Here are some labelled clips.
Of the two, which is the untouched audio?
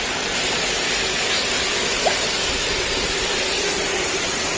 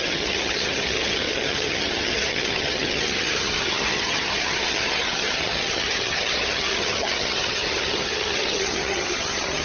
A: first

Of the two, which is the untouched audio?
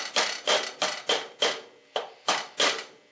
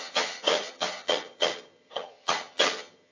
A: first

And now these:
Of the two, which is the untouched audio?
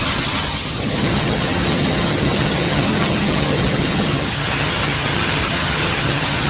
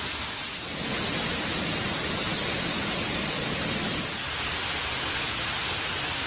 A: second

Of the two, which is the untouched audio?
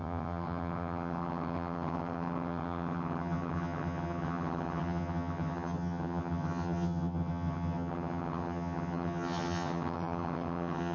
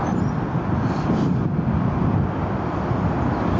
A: second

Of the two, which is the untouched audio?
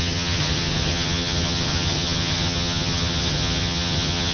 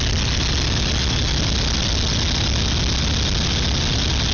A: second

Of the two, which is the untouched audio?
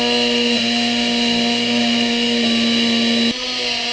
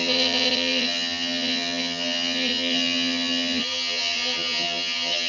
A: first